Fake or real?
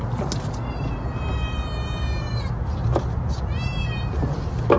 real